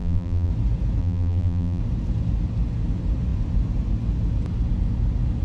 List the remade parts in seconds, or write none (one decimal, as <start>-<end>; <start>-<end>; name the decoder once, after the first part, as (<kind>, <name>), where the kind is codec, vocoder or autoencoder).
0.0-0.5 (vocoder, BigVGAN v2); 1.0-1.8